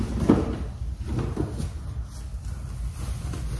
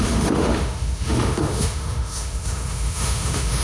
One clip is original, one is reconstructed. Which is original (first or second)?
first